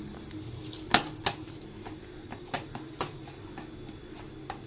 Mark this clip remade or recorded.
recorded